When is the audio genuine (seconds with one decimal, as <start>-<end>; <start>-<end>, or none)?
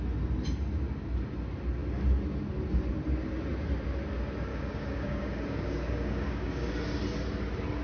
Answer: 0.0-4.5; 6.7-7.8